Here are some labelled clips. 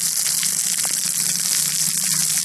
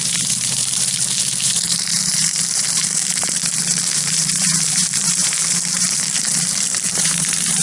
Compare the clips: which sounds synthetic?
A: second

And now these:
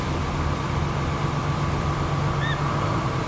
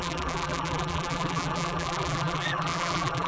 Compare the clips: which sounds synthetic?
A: second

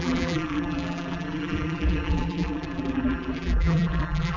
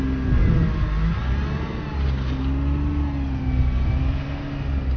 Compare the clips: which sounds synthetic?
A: first